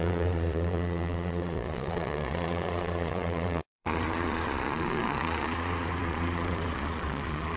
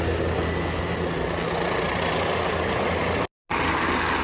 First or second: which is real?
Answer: second